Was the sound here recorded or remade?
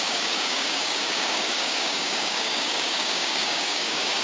remade